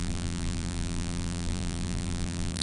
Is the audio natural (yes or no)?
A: no